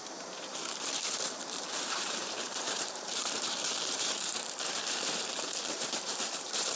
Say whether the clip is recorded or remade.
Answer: remade